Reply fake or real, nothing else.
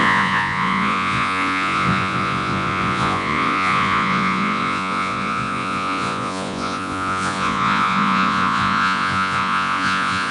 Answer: fake